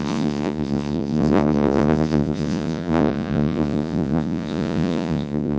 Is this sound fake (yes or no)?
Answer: yes